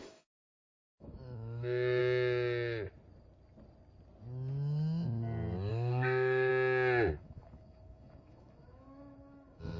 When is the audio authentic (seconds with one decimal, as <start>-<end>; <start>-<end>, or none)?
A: 2.0-5.7; 6.5-7.1

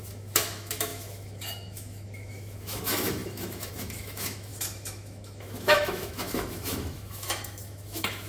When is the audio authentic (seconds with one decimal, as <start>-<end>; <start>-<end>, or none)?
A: none